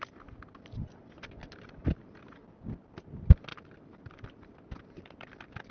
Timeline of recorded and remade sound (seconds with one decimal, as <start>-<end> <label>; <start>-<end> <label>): 0.0-5.7 recorded